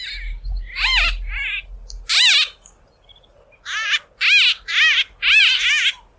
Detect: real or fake real